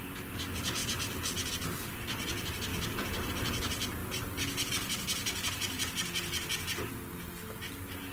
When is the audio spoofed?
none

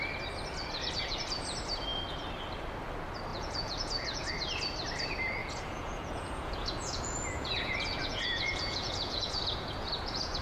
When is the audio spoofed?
3.3-4.3 (vocoder, Vocos); 5.4-10.4

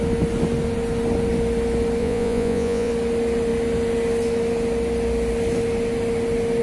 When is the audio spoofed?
2.0-2.9 (vocoder, Vocos)

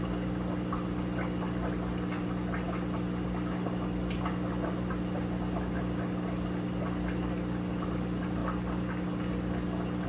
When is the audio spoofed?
none

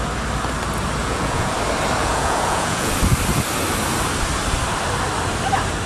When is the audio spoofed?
1.0-1.5 (vocoder, Vocos); 2.0-2.9

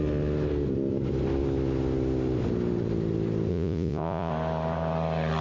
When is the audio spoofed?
3.5-4.3 (vocoder, Vocos)

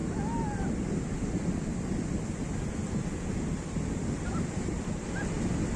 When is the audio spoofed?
none